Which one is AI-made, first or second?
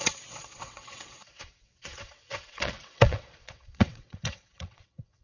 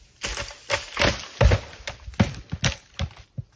first